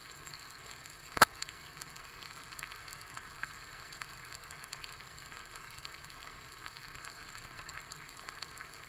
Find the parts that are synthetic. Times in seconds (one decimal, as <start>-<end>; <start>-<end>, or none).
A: 0.0-8.9